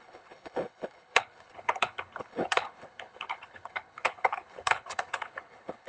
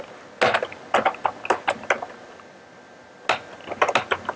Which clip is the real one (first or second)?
second